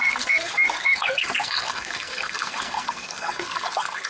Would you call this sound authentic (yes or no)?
no